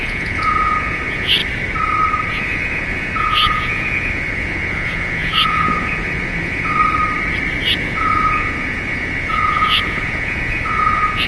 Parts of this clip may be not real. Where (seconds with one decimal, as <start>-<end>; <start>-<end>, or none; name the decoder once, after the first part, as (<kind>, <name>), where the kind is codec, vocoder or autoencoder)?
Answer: 0.0-1.4 (vocoder, Vocos); 2.3-6.8; 7.7-11.3